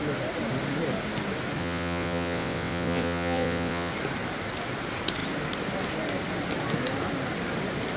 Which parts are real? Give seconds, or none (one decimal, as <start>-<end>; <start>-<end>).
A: 0.0-1.6; 3.9-8.0